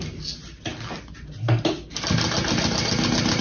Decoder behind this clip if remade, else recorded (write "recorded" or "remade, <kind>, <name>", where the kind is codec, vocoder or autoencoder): recorded